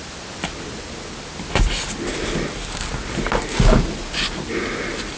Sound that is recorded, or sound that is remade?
recorded